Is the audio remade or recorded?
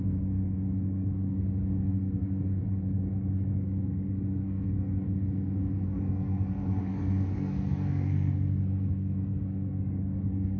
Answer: remade